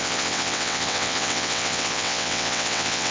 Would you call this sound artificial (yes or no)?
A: yes